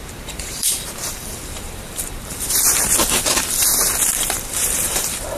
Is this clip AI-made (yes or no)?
yes